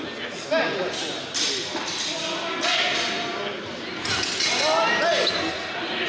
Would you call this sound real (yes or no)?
yes